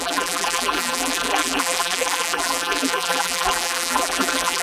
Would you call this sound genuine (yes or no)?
no